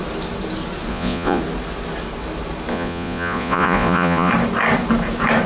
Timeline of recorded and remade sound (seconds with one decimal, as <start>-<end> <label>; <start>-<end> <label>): 0.0-0.9 recorded; 0.9-1.4 remade; 1.4-2.7 recorded; 2.7-4.3 remade; 4.3-5.5 recorded